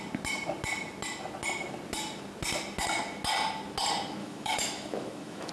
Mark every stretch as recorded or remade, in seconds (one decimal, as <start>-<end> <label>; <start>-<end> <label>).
0.0-4.2 recorded; 4.2-5.5 remade

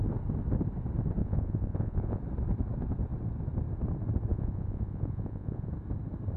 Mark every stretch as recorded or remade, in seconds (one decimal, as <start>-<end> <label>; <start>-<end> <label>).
0.0-1.2 recorded; 1.2-2.2 remade; 2.2-4.3 recorded; 4.3-5.7 remade; 5.7-6.4 recorded

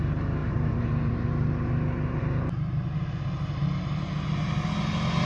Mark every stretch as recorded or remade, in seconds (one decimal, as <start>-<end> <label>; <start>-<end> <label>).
0.0-5.3 recorded

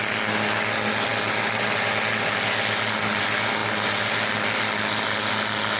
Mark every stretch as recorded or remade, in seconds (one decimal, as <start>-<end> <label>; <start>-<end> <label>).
0.0-5.8 recorded